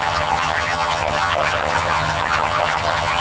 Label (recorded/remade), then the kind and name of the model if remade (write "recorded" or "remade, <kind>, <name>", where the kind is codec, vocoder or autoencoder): remade, vocoder, HiFi-GAN